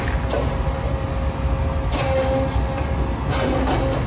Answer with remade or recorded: recorded